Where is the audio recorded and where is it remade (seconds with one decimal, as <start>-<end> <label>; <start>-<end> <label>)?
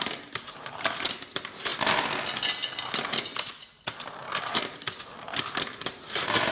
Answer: 0.0-1.7 remade; 1.7-5.6 recorded; 5.6-6.5 remade